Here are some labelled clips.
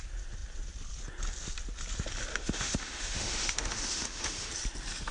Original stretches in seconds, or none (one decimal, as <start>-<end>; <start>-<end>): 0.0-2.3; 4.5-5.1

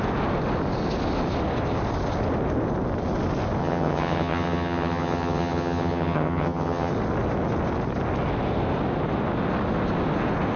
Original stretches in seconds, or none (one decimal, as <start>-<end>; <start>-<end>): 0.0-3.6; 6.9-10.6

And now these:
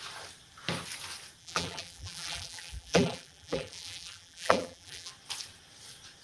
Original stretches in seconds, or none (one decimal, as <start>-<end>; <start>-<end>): 0.0-1.4; 5.1-6.2

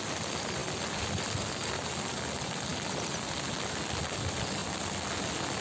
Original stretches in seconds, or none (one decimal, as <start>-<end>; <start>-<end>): 0.0-0.6; 1.9-2.7; 3.2-5.6